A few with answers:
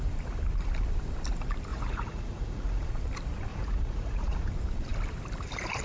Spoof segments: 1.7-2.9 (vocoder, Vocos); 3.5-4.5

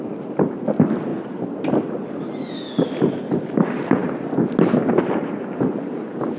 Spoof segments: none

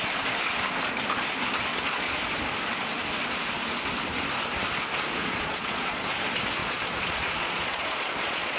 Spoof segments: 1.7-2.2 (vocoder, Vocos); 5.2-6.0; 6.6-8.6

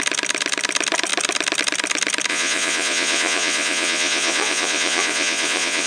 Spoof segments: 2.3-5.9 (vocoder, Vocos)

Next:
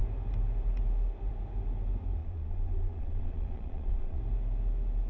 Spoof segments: 2.2-4.2 (vocoder, Vocos)